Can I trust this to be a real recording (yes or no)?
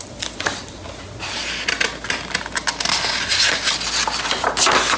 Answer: yes